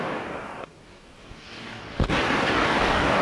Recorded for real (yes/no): no